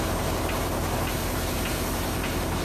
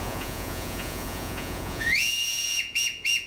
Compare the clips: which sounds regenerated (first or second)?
second